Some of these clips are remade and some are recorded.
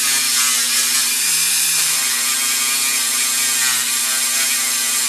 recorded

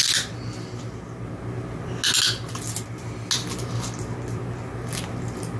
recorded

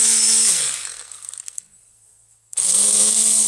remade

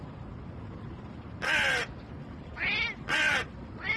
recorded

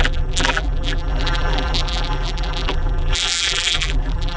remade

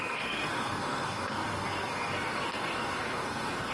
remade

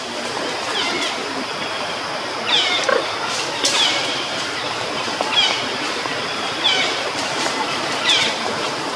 remade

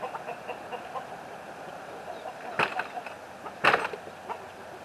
recorded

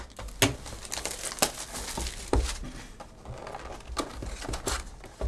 recorded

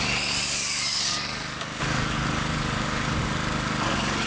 remade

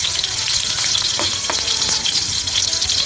remade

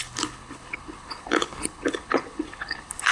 remade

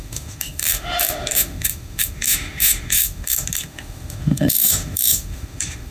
remade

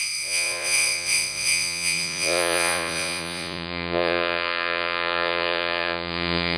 remade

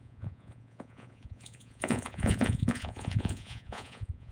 remade